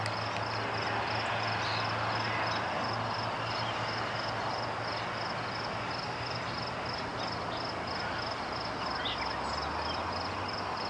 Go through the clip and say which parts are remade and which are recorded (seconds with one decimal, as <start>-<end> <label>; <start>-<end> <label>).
0.0-10.9 recorded